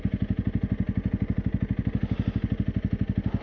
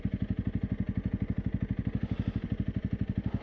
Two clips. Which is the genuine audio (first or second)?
first